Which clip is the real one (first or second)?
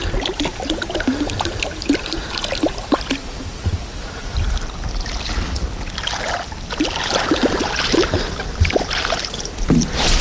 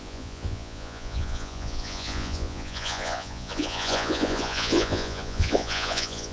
first